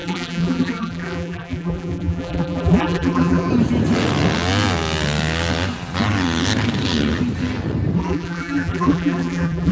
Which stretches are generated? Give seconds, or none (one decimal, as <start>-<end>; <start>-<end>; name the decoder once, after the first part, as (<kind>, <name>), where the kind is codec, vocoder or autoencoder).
0.0-3.5 (vocoder, BigVGAN v2); 8.0-9.7